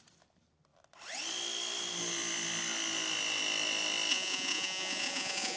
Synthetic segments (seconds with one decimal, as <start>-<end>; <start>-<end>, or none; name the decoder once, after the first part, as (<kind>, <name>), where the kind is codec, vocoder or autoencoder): 4.1-5.6 (vocoder, Vocos)